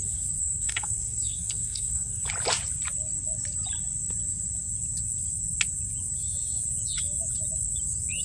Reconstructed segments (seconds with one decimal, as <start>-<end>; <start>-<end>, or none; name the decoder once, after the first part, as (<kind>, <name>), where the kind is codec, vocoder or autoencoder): 0.4-2.2 (codec, SNAC)